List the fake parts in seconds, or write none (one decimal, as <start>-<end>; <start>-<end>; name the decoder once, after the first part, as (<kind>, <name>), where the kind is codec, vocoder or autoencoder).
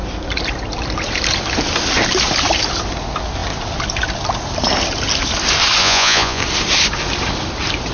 5.8-6.4 (vocoder, Vocos)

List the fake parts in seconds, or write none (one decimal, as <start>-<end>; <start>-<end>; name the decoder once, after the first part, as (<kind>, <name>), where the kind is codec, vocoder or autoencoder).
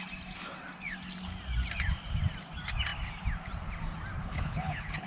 4.2-5.1 (codec, HILCodec)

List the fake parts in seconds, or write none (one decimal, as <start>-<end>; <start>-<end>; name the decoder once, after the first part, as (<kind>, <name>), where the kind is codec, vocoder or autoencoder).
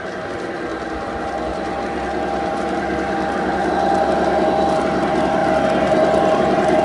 none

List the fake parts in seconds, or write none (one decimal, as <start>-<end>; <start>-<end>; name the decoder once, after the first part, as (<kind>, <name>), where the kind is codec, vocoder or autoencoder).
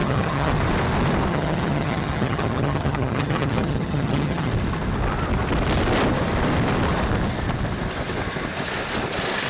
0.0-0.5 (vocoder, HiFi-GAN); 1.3-4.5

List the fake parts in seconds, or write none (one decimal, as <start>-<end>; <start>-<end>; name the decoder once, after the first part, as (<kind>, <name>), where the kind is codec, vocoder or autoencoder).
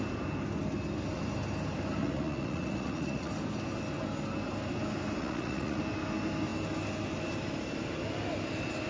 2.0-3.3 (vocoder, Vocos); 5.2-5.8